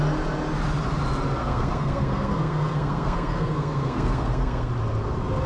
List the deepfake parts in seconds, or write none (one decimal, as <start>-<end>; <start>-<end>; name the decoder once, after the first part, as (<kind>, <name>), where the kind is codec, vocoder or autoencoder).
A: 1.4-4.7 (codec, SNAC)

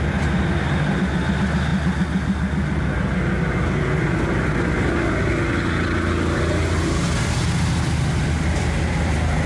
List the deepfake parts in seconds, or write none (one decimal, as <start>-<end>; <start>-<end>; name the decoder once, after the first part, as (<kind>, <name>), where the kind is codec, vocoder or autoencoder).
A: none

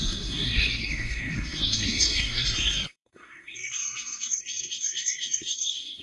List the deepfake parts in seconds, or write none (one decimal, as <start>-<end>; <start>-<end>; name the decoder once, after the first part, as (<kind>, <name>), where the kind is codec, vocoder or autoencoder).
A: 0.0-6.0 (codec, SNAC)

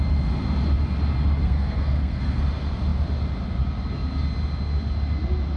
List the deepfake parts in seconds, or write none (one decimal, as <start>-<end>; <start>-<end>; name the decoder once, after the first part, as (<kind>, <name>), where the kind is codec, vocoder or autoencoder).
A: 1.4-2.4 (codec, SNAC)

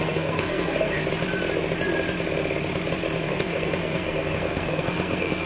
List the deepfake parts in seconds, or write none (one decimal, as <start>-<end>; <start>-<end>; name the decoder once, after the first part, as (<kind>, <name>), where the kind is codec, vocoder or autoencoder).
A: 0.0-1.0 (codec, SNAC); 3.2-5.5